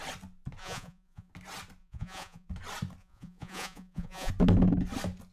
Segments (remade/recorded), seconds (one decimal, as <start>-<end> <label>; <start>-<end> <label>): 0.0-0.6 recorded; 0.6-1.3 remade; 1.3-1.8 recorded; 1.8-2.5 remade; 2.5-3.0 recorded; 3.0-4.3 remade; 4.3-5.3 recorded